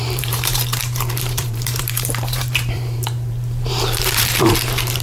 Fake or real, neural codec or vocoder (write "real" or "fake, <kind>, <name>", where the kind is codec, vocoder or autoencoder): fake, vocoder, BigVGAN v2